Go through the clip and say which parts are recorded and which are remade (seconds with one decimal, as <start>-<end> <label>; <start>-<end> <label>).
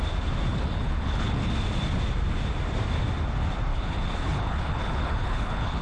0.0-0.5 recorded; 0.5-1.5 remade; 1.5-3.7 recorded; 3.7-5.8 remade